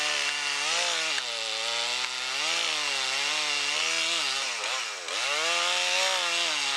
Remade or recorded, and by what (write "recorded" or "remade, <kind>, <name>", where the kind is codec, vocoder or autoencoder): recorded